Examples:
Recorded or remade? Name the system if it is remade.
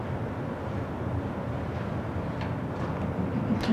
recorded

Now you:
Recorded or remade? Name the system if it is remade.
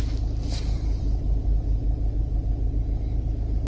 recorded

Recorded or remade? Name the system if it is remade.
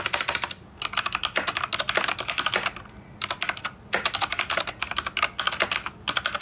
recorded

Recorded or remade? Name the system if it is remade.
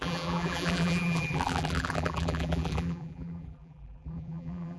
remade, vocoder, BigVGAN v2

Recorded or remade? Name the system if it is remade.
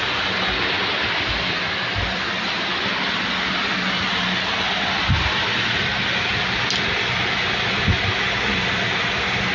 recorded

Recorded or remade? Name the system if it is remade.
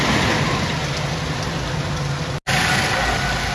recorded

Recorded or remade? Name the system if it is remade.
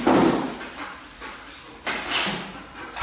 recorded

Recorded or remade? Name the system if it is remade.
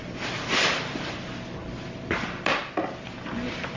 recorded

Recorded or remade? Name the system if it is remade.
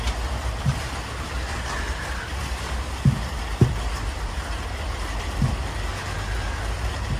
recorded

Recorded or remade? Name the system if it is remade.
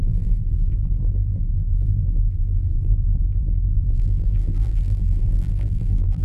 remade, vocoder, BigVGAN v2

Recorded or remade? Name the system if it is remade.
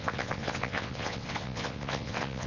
remade, vocoder, WaveNeXt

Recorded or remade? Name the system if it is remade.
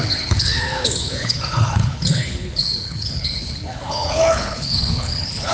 remade, codec, HILCodec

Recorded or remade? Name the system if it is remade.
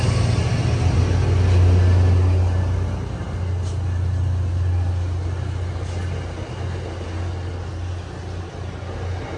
recorded